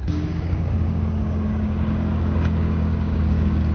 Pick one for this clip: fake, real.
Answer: fake